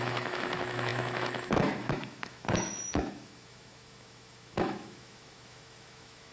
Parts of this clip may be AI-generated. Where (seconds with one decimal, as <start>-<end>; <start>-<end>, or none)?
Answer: 0.0-6.3